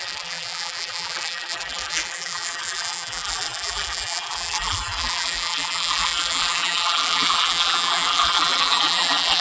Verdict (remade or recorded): remade